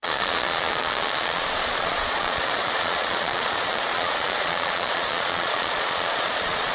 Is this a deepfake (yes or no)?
yes